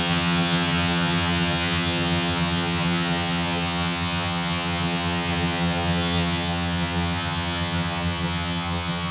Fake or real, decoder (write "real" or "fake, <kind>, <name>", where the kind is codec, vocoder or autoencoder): fake, vocoder, HiFi-GAN